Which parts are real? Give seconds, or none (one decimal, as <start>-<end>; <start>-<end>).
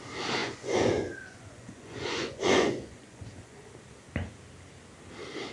0.0-0.4; 3.7-5.5